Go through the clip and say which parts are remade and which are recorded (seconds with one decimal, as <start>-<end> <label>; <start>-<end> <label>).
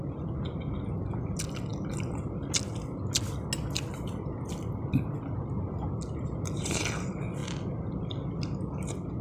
0.0-9.2 recorded